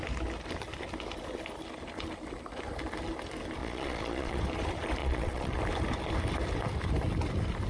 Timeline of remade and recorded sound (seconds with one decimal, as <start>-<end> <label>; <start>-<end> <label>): 0.0-3.6 recorded; 3.6-4.4 remade; 4.4-5.0 recorded; 5.0-5.6 remade; 5.6-7.7 recorded